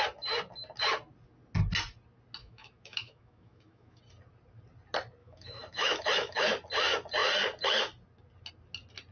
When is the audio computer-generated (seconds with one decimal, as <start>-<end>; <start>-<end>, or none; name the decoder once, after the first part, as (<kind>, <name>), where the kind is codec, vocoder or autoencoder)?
2.4-4.0 (autoencoder, DAC-VAE); 5.2-6.5